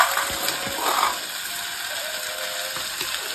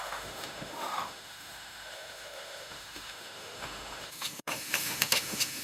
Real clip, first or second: first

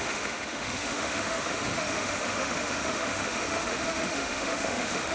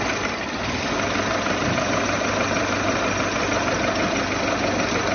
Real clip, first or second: second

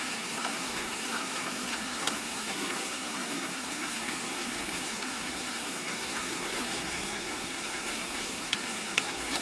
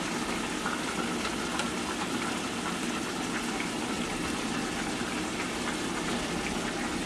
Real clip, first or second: second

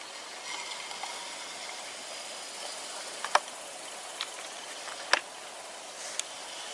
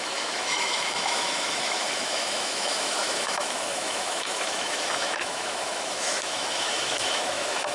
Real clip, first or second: first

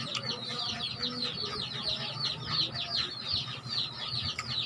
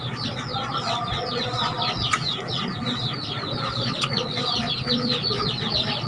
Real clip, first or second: first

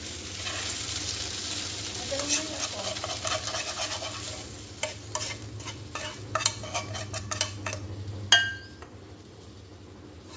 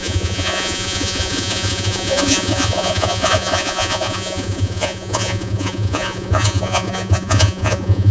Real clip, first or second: first